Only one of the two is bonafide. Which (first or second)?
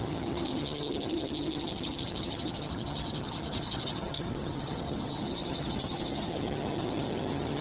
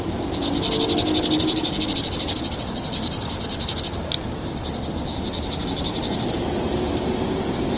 second